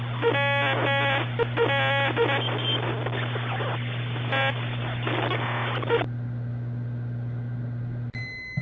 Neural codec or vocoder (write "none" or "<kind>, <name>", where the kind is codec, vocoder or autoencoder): none